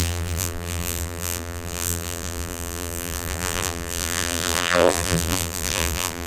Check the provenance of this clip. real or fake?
fake